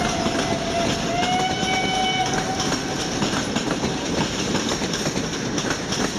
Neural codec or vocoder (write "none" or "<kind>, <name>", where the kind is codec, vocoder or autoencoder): none